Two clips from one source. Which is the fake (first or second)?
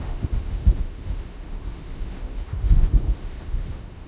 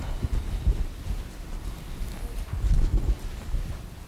first